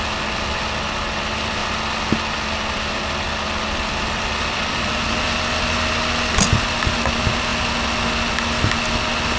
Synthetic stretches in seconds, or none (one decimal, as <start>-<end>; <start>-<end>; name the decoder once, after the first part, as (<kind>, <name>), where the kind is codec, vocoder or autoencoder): none

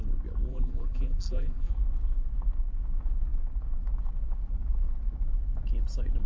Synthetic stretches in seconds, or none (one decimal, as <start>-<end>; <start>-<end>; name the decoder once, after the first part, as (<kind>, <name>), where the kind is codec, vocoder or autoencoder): 0.5-1.7 (vocoder, BigVGAN v2)

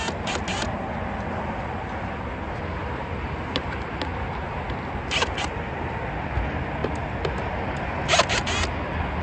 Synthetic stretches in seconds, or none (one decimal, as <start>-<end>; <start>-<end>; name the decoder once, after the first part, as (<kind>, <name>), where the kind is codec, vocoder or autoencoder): none

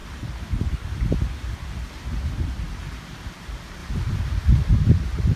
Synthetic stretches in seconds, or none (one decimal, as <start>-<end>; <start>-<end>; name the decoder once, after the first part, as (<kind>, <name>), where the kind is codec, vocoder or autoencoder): 3.2-5.4 (vocoder, BigVGAN v2)

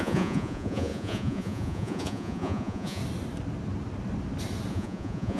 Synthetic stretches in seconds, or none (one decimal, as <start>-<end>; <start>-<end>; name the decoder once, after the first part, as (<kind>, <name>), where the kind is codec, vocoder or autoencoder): 0.0-3.0 (vocoder, Vocos); 4.7-5.4

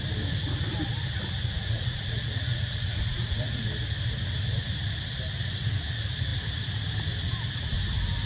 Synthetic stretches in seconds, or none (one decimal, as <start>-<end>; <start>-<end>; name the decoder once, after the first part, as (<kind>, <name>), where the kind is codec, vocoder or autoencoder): 1.4-3.7 (vocoder, Vocos)